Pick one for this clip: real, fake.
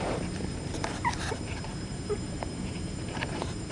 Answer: fake